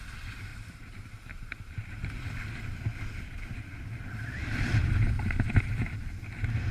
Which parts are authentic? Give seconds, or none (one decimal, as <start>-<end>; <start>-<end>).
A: 0.0-0.5; 2.2-6.7